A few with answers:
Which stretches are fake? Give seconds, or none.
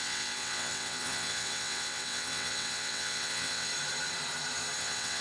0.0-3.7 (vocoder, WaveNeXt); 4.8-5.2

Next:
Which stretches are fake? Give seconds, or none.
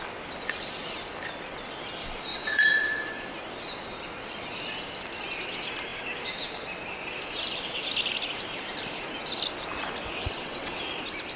2.3-3.3 (vocoder, WaveNeXt); 10.2-10.8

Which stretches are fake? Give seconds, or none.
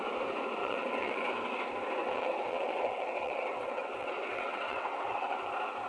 0.6-1.3 (vocoder, WaveNeXt); 2.0-5.5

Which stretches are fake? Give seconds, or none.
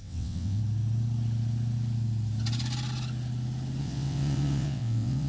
0.0-0.6 (vocoder, WaveNeXt); 3.8-5.3